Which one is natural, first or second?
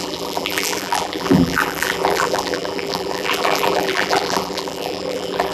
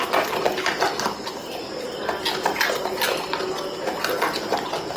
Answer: second